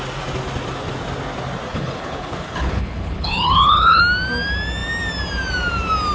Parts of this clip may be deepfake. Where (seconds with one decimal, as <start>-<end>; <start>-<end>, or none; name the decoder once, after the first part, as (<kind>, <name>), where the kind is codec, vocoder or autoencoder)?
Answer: 1.7-4.0 (codec, HILCodec)